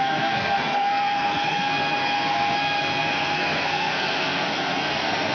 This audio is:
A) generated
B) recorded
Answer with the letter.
A